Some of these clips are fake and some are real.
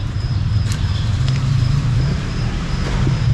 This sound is fake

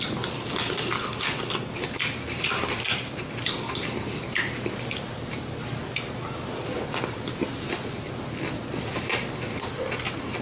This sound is real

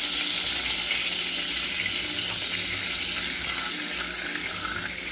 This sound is real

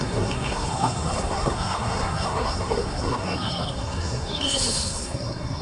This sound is fake